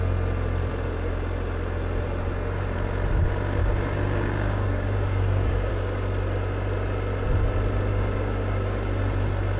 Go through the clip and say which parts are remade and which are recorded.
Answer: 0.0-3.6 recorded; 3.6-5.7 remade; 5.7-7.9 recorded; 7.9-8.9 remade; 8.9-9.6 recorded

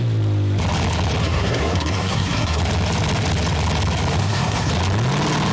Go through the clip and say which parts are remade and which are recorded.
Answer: 0.0-1.2 recorded; 1.2-2.6 remade; 2.6-4.2 recorded; 4.2-4.7 remade; 4.7-5.5 recorded

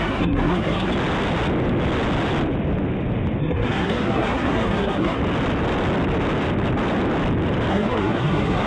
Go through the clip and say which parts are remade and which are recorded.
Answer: 0.0-0.9 remade; 0.9-3.4 recorded; 3.4-5.2 remade; 5.2-7.7 recorded; 7.7-8.7 remade